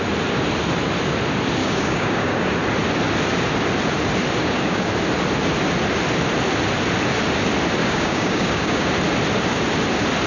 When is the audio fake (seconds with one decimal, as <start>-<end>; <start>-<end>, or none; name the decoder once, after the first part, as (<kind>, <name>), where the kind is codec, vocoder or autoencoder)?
1.6-2.5 (codec, DAC); 4.4-4.9; 7.8-8.9